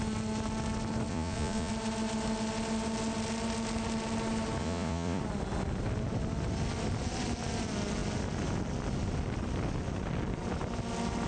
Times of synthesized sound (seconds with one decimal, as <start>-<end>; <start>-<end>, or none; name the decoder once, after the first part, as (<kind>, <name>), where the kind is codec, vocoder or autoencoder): 1.1-1.7 (vocoder, Vocos); 4.6-5.2